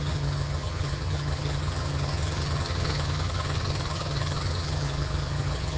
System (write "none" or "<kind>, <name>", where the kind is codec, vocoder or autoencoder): vocoder, HiFi-GAN